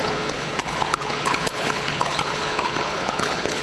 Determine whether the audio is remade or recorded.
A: remade